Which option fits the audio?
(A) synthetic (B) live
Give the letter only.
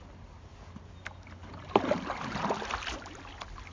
B